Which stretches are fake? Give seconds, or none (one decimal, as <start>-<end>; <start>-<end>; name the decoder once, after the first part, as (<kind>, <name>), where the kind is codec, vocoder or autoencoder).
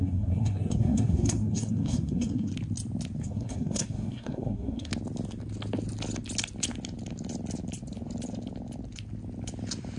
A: 0.0-2.5 (codec, SNAC); 3.2-4.9